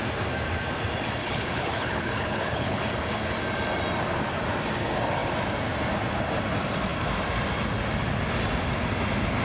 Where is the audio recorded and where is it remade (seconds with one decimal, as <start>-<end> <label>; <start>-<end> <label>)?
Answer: 0.0-1.2 recorded; 1.2-2.8 remade; 2.8-9.4 recorded